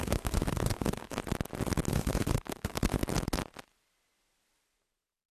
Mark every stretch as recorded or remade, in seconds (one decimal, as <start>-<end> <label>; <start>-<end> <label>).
0.0-1.2 remade; 1.2-1.9 recorded; 1.9-3.0 remade; 3.0-5.3 recorded